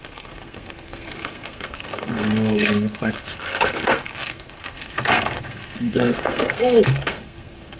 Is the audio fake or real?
fake